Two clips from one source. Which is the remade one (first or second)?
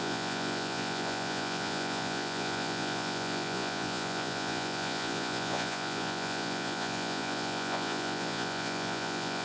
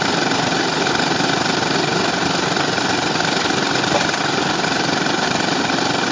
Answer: first